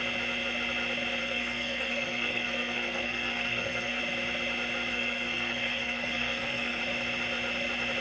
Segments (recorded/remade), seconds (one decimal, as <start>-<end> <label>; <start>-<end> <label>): 0.0-1.2 recorded; 1.2-4.0 remade; 4.0-4.9 recorded; 4.9-6.8 remade; 6.8-8.0 recorded